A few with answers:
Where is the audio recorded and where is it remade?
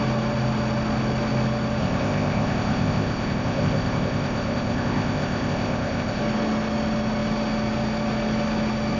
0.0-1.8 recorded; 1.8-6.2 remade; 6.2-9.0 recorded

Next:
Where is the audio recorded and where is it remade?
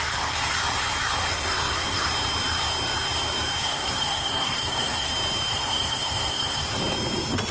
0.0-1.3 recorded; 1.3-2.1 remade; 2.1-3.6 recorded; 3.6-5.1 remade; 5.1-5.5 recorded; 5.5-6.8 remade; 6.8-7.5 recorded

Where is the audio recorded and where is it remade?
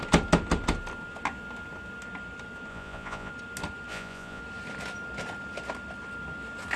0.0-2.7 recorded; 2.7-3.3 remade; 3.3-3.9 recorded; 3.9-4.4 remade; 4.4-6.8 recorded